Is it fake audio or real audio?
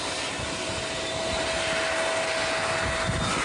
real